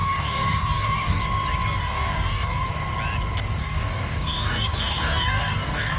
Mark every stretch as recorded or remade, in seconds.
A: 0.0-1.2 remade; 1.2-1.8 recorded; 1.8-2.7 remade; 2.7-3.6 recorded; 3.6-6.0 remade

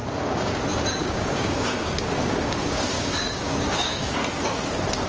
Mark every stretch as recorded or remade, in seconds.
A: 0.0-0.6 remade; 0.6-1.0 recorded; 1.0-4.1 remade; 4.1-5.1 recorded

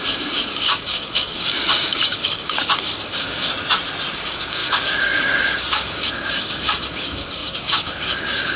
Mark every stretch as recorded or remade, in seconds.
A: 0.0-3.5 remade; 3.5-4.1 recorded; 4.1-8.6 remade

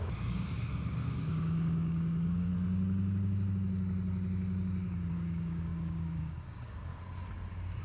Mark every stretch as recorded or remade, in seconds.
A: 0.0-2.5 remade; 2.5-5.1 recorded; 5.1-6.9 remade; 6.9-7.8 recorded

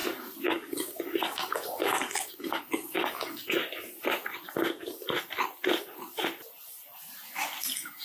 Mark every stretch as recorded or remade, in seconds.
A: 0.0-0.5 recorded; 0.5-3.6 remade; 3.6-7.6 recorded; 7.6-8.0 remade

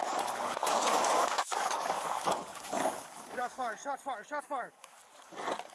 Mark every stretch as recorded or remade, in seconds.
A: 0.0-3.8 remade; 3.8-4.4 recorded; 4.4-5.0 remade; 5.0-5.7 recorded

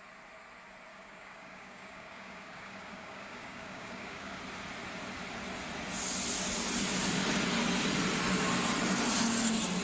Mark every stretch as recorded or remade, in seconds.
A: 0.0-0.9 recorded; 0.9-4.4 remade; 4.4-9.8 recorded

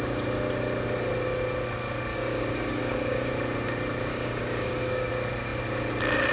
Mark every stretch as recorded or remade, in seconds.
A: 0.0-2.1 recorded; 2.1-3.3 remade; 3.3-4.1 recorded; 4.1-5.1 remade; 5.1-6.3 recorded